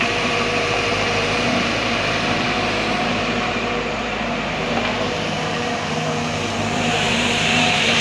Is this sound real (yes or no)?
no